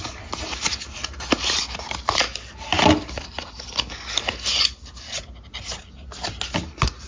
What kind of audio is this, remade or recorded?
recorded